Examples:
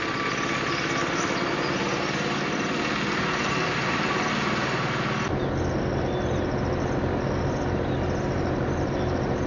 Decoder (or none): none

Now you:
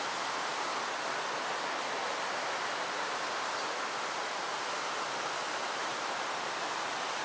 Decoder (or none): none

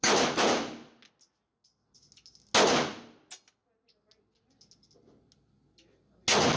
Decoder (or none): none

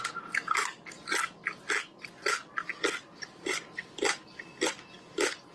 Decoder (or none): none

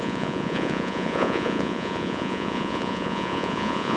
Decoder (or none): vocoder, Vocos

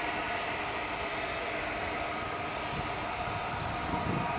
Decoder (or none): none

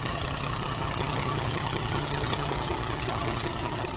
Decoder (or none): vocoder, HiFi-GAN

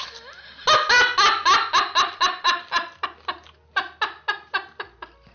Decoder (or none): none